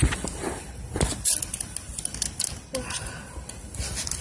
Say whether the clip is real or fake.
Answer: real